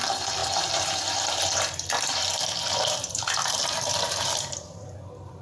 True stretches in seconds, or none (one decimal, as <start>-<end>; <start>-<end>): none